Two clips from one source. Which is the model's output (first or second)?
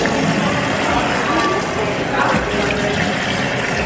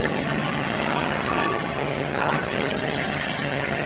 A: second